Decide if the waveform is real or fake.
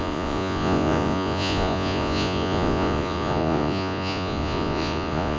fake